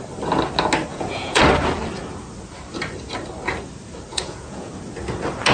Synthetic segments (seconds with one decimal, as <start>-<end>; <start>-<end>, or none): 0.9-1.4; 4.1-4.7